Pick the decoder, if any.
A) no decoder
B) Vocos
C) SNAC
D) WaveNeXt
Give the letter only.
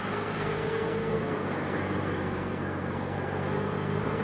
C